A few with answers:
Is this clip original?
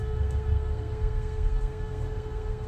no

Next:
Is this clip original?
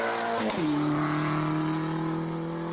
yes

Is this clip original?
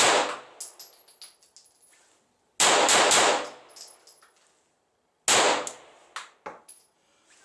yes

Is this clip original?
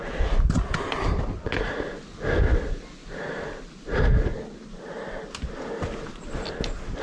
yes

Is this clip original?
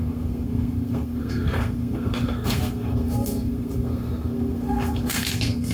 no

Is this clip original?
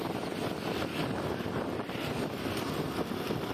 yes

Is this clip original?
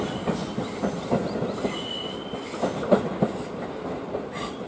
yes